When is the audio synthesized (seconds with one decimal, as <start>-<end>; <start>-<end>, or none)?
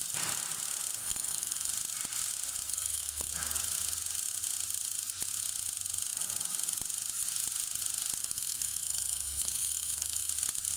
1.0-1.7; 2.7-3.3; 8.2-10.3